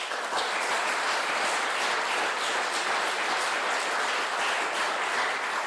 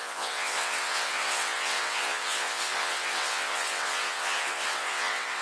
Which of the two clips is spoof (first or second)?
second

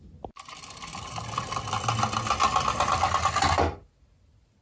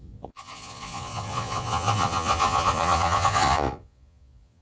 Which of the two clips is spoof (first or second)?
second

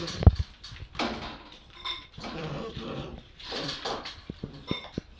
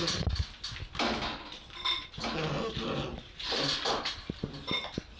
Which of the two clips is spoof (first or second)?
first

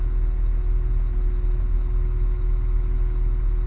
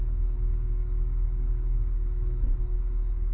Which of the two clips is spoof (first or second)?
second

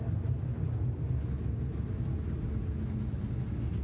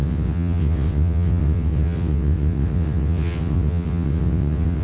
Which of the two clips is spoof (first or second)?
second